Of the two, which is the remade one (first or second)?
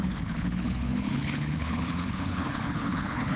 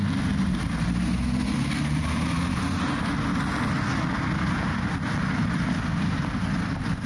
first